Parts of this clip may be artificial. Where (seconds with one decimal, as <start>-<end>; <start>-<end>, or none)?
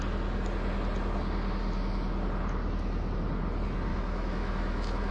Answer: 3.9-5.1